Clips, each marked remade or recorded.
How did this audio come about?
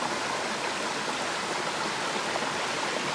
recorded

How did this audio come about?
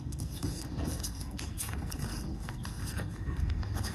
remade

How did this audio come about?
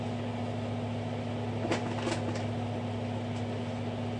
recorded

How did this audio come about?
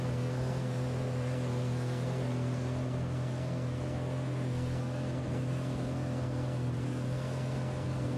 remade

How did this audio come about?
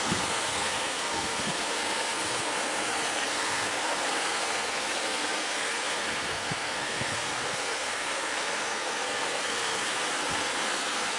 remade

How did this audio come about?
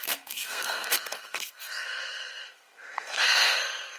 remade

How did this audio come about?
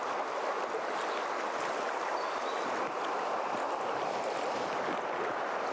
recorded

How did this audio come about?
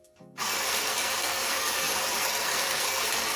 remade